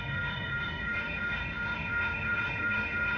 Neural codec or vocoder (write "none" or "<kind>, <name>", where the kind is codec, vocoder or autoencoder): autoencoder, DAC-VAE